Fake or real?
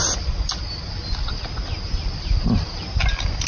real